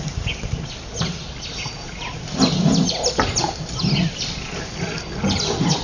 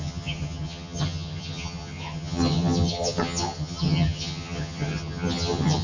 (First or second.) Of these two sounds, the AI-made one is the second